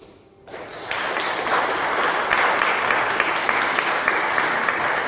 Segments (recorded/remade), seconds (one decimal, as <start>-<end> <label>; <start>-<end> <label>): 0.0-5.1 recorded